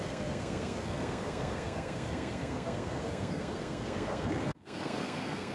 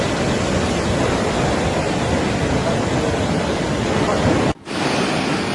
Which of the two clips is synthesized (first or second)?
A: first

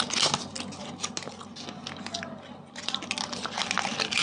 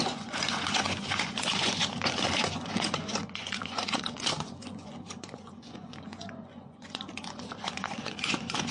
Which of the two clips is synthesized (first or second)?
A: second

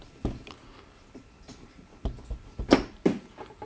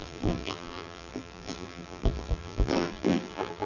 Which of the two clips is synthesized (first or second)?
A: second